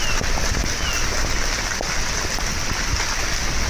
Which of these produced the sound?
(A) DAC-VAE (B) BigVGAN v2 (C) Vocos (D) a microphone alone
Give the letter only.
D